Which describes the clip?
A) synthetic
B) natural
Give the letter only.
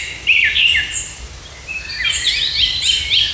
A